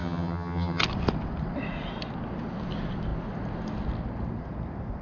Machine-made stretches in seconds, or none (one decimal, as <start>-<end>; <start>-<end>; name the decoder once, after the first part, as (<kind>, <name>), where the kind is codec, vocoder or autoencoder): 0.0-0.8 (vocoder, HiFi-GAN)